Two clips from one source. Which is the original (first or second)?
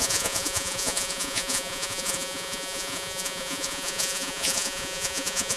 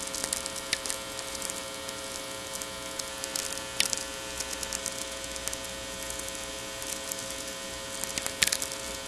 second